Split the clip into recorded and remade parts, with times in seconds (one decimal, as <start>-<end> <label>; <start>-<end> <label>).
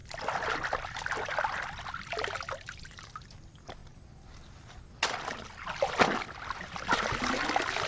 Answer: 0.0-7.9 recorded